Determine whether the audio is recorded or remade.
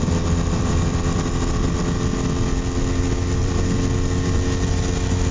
recorded